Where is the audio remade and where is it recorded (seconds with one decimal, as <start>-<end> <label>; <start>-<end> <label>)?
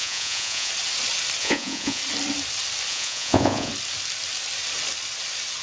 0.0-0.7 remade; 0.7-1.4 recorded; 1.4-2.0 remade; 2.0-2.9 recorded; 2.9-3.7 remade; 3.7-5.6 recorded